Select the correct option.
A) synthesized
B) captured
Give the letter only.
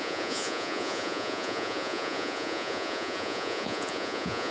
A